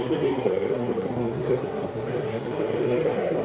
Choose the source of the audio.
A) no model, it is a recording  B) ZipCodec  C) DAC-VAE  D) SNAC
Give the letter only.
D